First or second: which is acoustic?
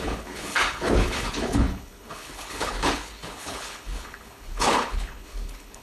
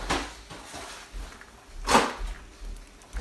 second